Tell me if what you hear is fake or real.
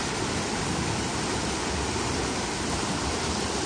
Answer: real